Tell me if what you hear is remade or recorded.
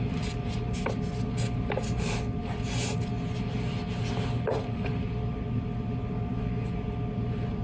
recorded